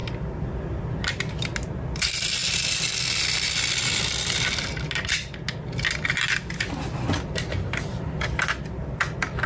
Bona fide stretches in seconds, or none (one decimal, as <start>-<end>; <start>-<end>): 0.0-9.5